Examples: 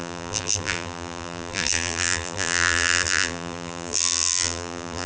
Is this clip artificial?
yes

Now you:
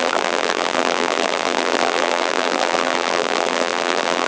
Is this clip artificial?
yes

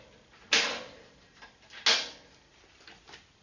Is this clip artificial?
no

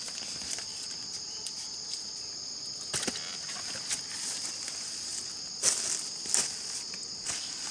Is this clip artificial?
no